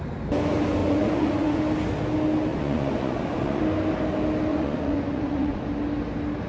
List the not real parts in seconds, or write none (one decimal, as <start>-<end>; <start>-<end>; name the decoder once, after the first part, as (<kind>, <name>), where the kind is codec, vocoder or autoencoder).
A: 0.8-1.6 (vocoder, Vocos); 2.5-3.6; 4.5-5.6